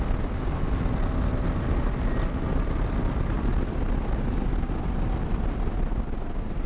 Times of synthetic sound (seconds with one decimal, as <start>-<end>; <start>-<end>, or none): none

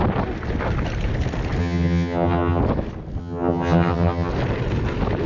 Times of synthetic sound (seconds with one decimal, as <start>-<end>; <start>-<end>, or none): 1.6-2.6; 3.2-4.3

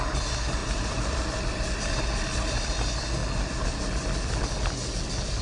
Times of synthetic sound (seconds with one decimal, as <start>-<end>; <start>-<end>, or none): 0.6-1.2